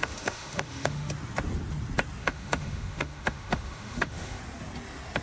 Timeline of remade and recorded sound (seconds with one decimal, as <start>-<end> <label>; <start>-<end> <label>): 0.0-1.1 remade; 1.1-2.2 recorded; 2.2-4.4 remade; 4.4-5.2 recorded